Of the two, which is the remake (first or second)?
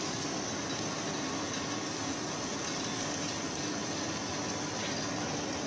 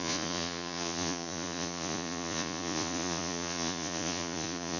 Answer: second